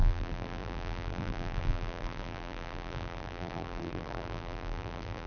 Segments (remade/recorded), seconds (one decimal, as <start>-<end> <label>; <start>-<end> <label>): 0.0-5.3 remade